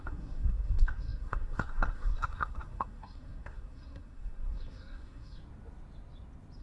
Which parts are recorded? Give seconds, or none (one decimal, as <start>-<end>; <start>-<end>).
5.4-6.6